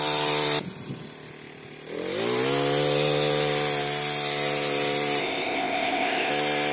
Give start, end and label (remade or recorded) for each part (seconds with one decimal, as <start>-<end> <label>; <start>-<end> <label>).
0.0-5.2 recorded; 5.2-6.3 remade; 6.3-6.7 recorded